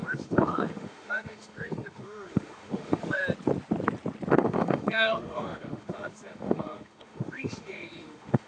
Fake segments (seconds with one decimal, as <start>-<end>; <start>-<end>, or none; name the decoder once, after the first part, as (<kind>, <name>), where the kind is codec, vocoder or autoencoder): 0.0-3.2 (autoencoder, DAC-VAE); 4.3-8.5